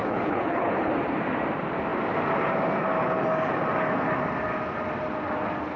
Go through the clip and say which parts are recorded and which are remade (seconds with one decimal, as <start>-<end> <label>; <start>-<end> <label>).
0.0-0.9 remade; 0.9-5.8 recorded